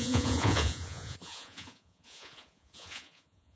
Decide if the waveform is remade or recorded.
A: remade